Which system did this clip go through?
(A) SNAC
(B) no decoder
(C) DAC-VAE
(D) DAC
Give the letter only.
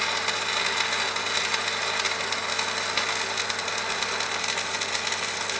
B